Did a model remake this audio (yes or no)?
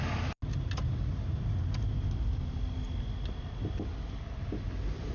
no